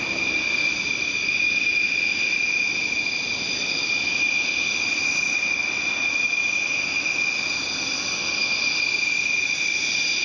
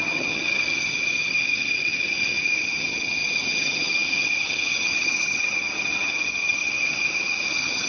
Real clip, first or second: first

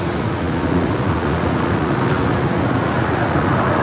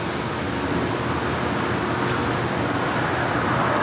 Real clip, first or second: second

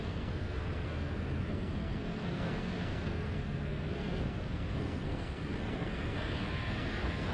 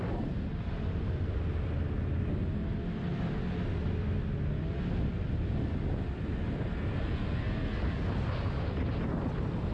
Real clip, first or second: second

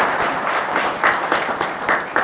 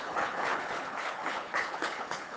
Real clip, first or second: first